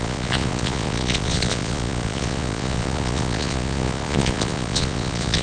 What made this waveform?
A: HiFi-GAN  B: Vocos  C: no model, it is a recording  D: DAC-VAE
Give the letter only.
B